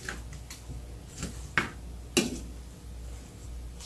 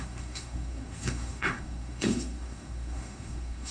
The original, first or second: first